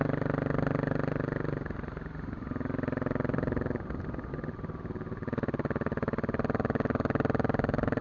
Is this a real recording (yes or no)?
yes